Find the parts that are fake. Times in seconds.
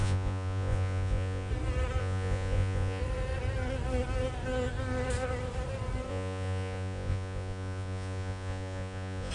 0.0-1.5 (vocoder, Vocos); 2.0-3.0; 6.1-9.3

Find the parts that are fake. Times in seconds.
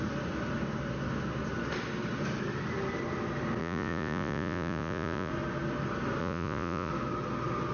3.6-5.3 (vocoder, Vocos); 6.2-6.9